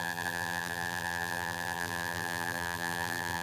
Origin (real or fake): fake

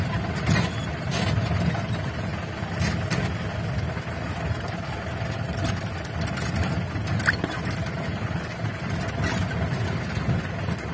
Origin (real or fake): real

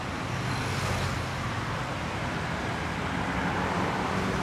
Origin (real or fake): real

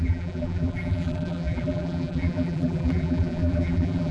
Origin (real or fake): fake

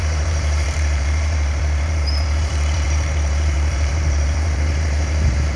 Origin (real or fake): fake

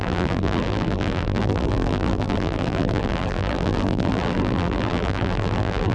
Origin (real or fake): fake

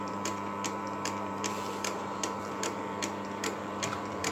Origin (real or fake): fake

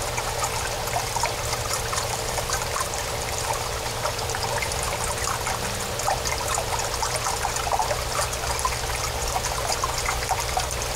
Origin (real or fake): real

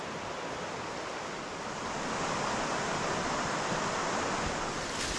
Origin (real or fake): real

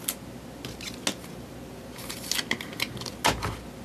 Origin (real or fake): real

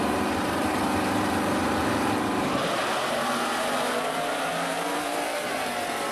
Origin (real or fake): fake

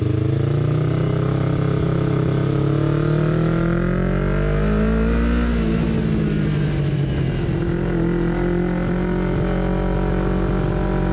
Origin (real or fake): real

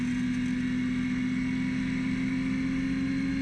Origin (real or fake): real